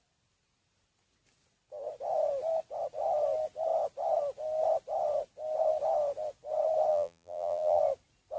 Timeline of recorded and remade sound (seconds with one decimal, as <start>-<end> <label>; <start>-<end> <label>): 0.0-6.9 recorded; 6.9-7.8 remade; 7.8-8.4 recorded